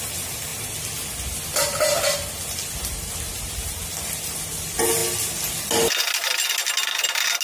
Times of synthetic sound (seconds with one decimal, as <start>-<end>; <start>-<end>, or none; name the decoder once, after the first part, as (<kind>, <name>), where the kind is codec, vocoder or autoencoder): none